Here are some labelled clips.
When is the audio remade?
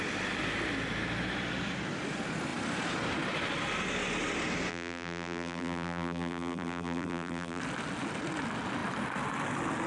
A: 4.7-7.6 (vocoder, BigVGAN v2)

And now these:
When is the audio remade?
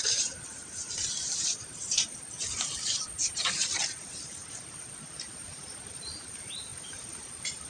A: 0.0-7.7 (vocoder, BigVGAN v2)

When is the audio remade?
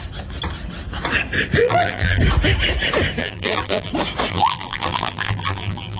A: 1.6-2.2 (vocoder, BigVGAN v2); 3.2-3.9; 4.3-6.0